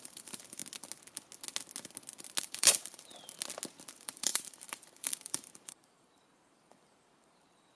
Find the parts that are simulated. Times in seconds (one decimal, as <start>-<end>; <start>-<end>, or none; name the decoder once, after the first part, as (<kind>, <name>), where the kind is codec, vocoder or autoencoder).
0.0-0.6 (vocoder, BigVGAN v2); 2.4-3.1; 3.9-7.8